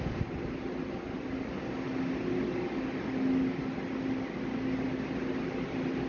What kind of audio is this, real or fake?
real